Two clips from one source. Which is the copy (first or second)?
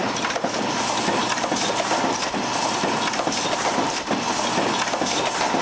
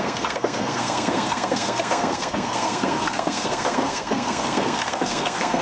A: second